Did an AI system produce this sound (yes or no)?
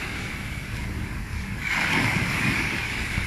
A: yes